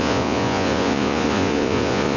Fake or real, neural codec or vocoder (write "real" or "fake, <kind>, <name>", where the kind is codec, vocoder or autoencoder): fake, vocoder, Vocos